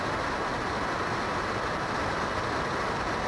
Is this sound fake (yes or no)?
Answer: no